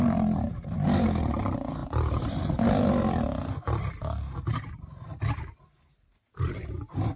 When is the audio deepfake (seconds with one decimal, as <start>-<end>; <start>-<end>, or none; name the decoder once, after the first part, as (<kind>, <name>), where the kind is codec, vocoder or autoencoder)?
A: 1.8-2.9 (vocoder, BigVGAN v2); 4.5-6.7